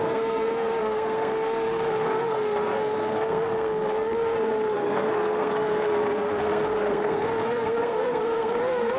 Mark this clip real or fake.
fake